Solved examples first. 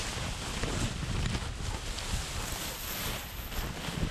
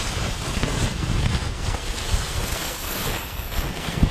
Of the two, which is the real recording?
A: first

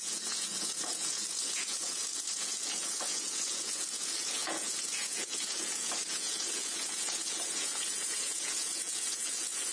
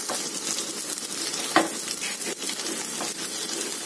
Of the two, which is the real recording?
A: second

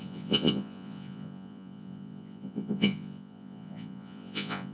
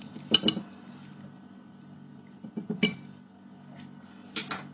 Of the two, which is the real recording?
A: second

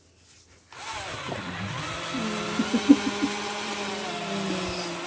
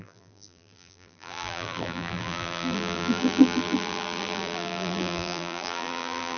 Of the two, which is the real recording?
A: first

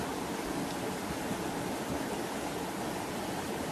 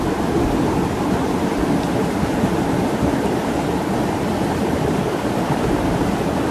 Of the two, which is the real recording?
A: first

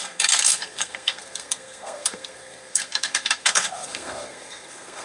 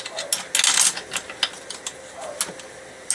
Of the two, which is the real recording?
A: second